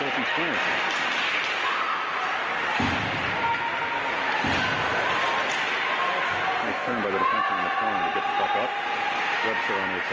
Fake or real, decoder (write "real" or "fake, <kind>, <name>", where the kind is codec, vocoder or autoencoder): real